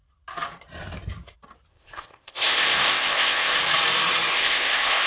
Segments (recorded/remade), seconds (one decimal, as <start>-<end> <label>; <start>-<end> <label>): 0.0-1.7 recorded; 1.7-3.6 remade; 3.6-4.3 recorded; 4.3-5.1 remade